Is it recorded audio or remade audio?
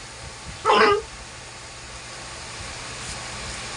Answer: recorded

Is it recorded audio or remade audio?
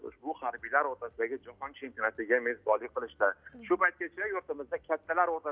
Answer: recorded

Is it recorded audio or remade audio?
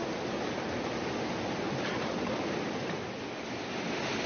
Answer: recorded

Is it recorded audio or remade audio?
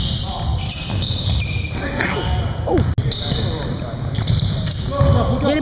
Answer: recorded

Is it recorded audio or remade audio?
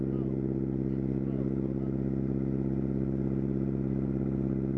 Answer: recorded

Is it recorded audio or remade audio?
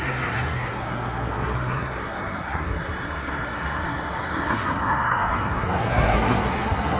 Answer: remade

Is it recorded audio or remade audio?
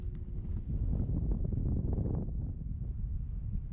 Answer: recorded